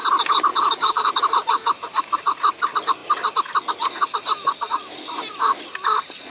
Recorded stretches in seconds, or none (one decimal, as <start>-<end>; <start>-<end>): 0.0-0.5; 1.1-6.3